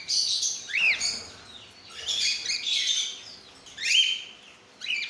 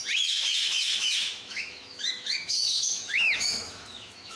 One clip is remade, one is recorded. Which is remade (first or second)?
second